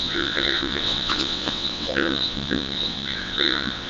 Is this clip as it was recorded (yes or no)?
no